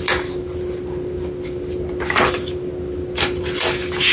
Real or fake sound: real